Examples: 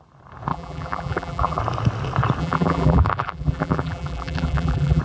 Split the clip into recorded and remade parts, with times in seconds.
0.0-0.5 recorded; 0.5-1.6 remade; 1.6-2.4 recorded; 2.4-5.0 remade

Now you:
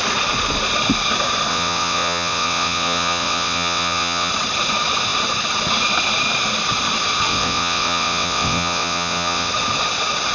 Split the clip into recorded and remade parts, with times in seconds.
0.0-1.5 recorded; 1.5-4.3 remade; 4.3-7.3 recorded; 7.3-9.5 remade; 9.5-10.3 recorded

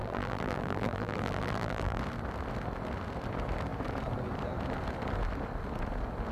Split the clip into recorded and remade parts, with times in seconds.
0.0-2.0 remade; 2.0-6.3 recorded

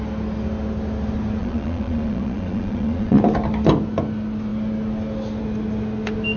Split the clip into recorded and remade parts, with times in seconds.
0.0-1.4 recorded; 1.4-3.2 remade; 3.2-6.4 recorded